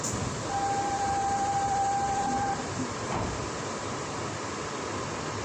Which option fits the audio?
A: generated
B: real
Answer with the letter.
A